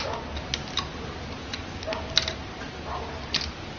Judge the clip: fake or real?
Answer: real